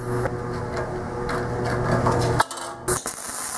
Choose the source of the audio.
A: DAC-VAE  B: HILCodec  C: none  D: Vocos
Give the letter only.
C